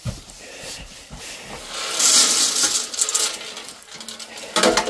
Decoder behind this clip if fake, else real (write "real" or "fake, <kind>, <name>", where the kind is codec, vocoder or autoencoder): real